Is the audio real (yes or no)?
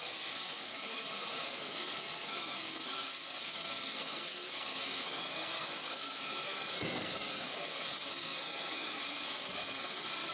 no